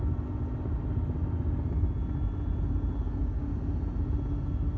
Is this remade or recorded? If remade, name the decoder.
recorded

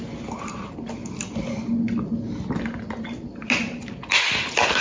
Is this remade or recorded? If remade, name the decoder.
recorded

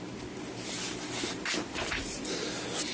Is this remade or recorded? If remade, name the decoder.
recorded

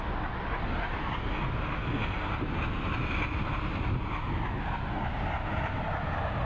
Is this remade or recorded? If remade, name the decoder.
recorded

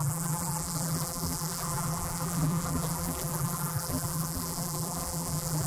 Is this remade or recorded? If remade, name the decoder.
remade, vocoder, BigVGAN v2